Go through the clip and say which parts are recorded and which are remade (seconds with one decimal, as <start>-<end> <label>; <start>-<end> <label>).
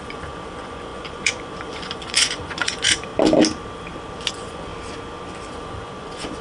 0.0-3.1 remade; 3.1-4.3 recorded; 4.3-4.7 remade; 4.7-5.5 recorded; 5.5-6.4 remade